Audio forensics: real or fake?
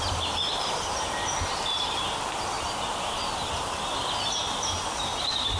real